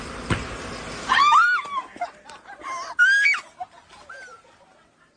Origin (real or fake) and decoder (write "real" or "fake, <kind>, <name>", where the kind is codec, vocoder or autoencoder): real